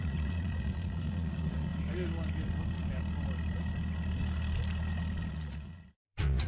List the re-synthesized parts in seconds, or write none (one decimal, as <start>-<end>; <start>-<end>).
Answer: 0.0-1.7; 5.3-6.5